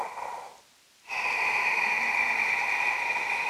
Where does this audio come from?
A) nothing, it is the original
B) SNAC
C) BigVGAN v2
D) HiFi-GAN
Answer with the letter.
A